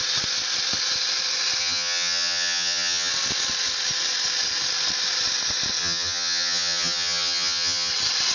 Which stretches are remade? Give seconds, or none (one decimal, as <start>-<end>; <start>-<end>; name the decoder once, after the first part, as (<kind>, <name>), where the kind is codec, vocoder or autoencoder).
1.6-3.1 (vocoder, HiFi-GAN); 5.8-7.9

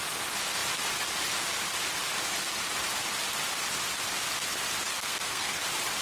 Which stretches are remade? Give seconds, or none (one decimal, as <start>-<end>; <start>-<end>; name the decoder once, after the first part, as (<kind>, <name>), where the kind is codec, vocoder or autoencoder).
4.9-5.6 (codec, SNAC)

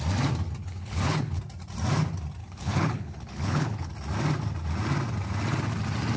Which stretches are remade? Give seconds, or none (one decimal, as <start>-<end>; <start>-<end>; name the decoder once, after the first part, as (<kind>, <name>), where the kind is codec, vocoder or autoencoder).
0.6-1.4 (codec, HILCodec); 2.4-3.9

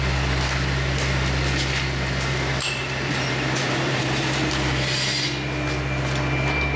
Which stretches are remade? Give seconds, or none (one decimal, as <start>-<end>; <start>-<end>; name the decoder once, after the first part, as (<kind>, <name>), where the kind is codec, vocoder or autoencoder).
2.8-4.5 (vocoder, BigVGAN v2)

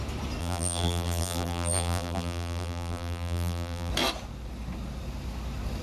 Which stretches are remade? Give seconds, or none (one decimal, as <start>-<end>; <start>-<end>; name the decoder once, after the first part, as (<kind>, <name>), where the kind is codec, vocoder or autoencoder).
0.4-3.9 (vocoder, BigVGAN v2)

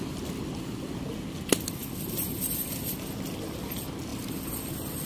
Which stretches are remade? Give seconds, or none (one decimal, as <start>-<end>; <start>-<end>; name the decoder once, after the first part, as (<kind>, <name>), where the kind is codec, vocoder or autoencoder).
none

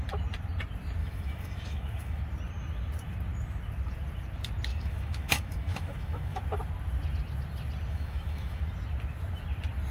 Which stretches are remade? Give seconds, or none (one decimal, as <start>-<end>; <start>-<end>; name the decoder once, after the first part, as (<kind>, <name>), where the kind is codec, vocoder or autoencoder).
1.0-2.2 (autoencoder, DAC-VAE); 4.7-6.4; 7.9-8.6

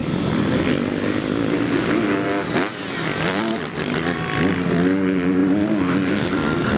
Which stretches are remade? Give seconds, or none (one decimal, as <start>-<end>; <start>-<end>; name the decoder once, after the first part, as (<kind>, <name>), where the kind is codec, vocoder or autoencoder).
3.2-5.4 (vocoder, BigVGAN v2); 6.1-6.8